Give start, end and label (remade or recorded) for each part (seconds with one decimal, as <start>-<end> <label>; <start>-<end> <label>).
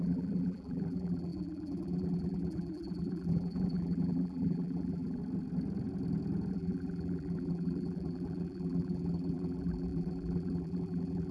0.0-5.2 remade; 5.2-6.5 recorded; 6.5-11.3 remade